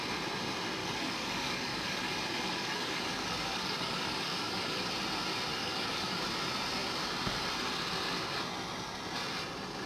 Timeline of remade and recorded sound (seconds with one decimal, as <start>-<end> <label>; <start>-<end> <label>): 0.0-0.8 recorded; 0.8-4.9 remade; 4.9-5.5 recorded; 5.5-6.2 remade; 6.2-9.9 recorded